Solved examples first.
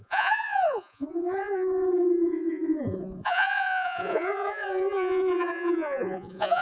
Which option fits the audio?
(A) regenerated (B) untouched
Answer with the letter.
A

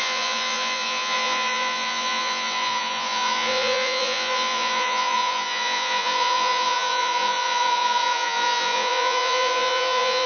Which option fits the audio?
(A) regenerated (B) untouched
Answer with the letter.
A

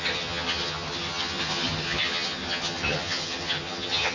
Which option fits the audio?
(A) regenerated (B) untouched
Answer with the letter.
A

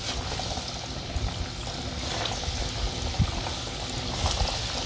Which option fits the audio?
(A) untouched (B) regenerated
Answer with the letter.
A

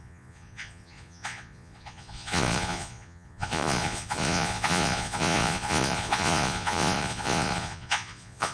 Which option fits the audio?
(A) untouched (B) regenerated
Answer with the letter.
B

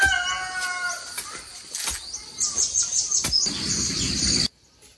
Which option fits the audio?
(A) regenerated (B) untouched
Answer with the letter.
B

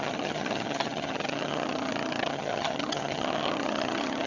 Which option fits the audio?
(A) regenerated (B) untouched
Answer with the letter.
A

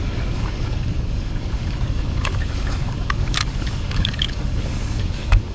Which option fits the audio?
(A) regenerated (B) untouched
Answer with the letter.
A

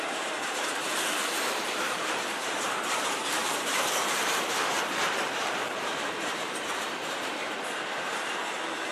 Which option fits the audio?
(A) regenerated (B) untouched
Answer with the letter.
A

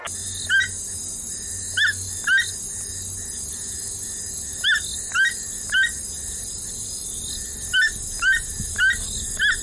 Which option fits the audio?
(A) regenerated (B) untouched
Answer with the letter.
B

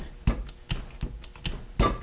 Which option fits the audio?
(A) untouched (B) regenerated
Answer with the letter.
A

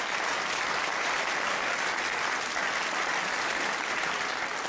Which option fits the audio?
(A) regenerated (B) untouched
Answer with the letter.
B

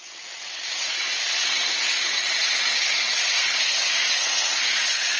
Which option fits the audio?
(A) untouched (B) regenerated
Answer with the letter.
B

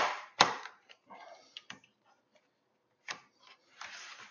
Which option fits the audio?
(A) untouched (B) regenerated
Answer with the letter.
B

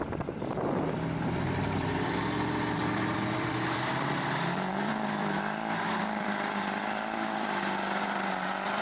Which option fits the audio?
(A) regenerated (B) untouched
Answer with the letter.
A